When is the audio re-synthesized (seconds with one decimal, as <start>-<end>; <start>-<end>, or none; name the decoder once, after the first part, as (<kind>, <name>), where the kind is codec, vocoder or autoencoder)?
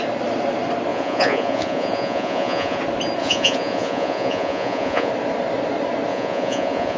0.9-2.8 (vocoder, Vocos); 3.2-5.1; 6.1-7.0